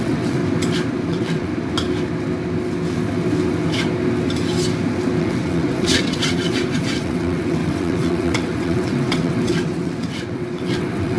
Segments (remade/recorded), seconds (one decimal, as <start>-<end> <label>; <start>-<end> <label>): 0.0-0.4 remade; 0.4-1.1 recorded; 1.1-1.5 remade; 1.5-5.2 recorded; 5.2-11.2 remade